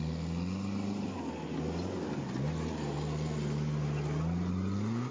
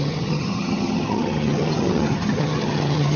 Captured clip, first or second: first